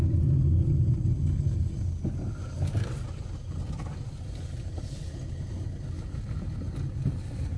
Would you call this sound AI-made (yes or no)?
no